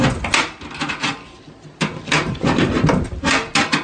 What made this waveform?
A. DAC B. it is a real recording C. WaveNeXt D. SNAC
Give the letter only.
B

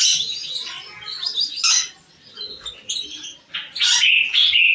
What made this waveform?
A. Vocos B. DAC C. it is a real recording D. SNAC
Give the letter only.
C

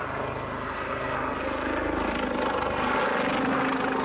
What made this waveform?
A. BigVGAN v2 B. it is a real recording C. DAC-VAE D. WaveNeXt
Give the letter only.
B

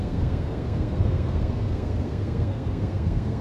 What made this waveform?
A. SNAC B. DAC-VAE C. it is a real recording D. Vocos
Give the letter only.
A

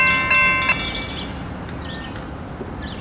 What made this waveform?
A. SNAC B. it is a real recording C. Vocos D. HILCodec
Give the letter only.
B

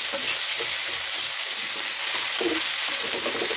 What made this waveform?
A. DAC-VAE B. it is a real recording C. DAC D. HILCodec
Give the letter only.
B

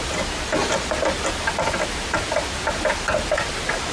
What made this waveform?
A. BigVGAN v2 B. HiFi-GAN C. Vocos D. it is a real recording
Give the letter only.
D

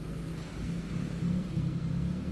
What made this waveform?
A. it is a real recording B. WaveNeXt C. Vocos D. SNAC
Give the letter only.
D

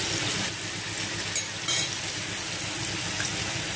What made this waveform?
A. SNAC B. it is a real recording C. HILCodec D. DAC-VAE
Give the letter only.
B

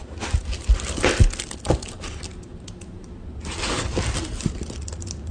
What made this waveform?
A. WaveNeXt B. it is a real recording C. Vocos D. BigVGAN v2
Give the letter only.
B